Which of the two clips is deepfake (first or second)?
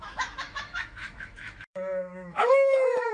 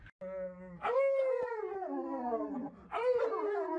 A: first